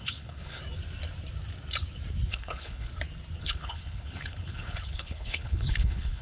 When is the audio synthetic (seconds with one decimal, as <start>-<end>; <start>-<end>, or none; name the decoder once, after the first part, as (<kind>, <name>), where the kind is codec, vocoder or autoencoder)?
0.0-0.6 (codec, HILCodec); 2.3-2.9; 3.4-6.2